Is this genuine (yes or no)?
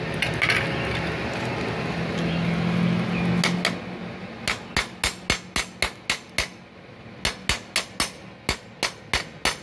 yes